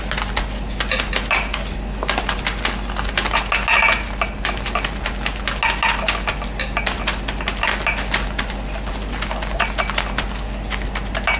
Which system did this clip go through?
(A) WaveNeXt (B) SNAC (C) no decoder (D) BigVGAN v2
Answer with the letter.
C